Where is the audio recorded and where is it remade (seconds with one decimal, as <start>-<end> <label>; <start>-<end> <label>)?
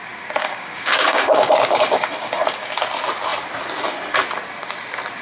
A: 0.0-0.4 recorded; 0.4-2.8 remade; 2.8-5.2 recorded